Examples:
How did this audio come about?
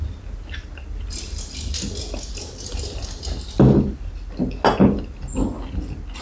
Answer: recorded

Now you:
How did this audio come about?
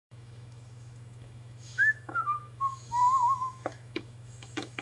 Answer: remade